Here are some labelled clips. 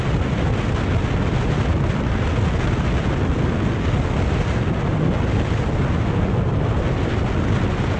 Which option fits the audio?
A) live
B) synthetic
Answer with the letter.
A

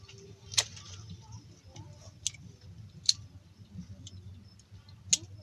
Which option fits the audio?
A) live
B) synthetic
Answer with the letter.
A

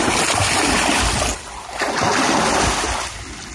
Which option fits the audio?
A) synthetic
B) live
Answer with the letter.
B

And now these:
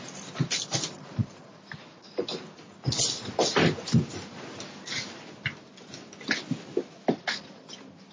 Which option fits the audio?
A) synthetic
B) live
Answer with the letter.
B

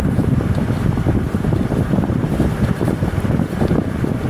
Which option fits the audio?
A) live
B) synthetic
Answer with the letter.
A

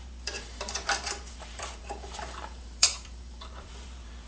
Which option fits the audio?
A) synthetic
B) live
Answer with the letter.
A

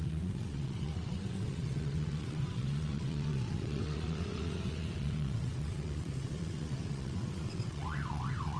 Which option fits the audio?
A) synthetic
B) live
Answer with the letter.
A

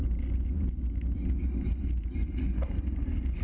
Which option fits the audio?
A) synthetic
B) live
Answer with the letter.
B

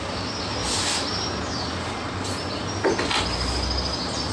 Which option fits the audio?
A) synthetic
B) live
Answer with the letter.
B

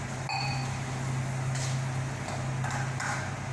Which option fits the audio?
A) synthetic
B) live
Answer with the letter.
B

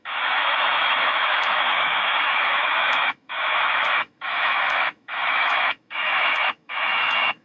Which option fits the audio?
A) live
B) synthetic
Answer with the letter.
B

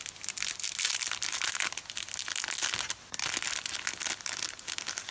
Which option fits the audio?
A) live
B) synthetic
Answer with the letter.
A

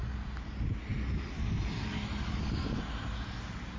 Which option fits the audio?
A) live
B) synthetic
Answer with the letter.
A